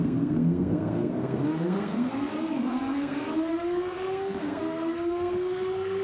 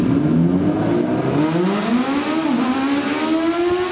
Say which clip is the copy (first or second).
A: first